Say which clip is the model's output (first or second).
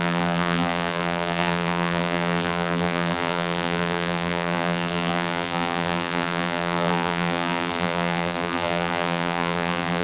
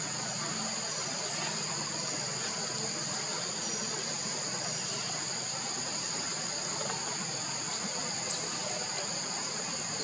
first